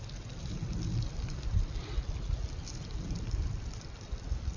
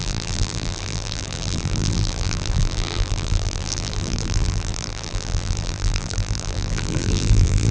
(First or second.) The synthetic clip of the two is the second